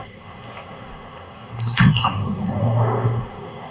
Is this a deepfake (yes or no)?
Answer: yes